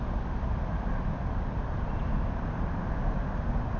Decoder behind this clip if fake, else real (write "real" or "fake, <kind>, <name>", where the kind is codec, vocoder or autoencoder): real